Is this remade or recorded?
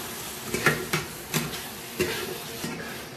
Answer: recorded